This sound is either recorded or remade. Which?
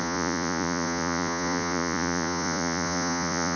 remade